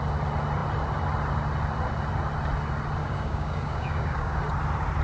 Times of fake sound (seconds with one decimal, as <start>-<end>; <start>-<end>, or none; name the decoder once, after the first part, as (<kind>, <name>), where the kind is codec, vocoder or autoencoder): 3.0-4.4 (codec, DAC)